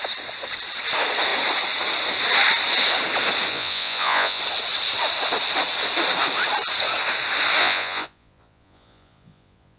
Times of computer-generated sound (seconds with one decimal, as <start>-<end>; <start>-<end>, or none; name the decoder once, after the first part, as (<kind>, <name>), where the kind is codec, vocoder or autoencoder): 3.5-4.4 (vocoder, Vocos); 7.6-9.8